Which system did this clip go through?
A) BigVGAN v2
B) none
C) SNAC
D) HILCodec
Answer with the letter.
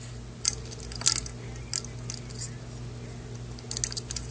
B